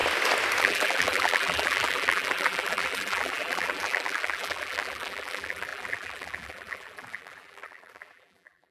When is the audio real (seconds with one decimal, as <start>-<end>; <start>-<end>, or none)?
0.0-0.6